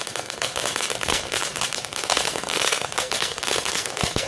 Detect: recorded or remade remade